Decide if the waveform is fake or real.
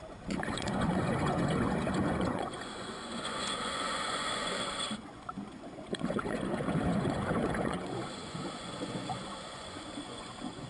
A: fake